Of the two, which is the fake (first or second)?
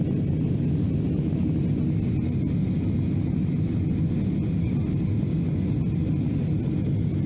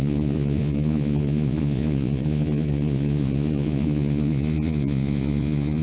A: second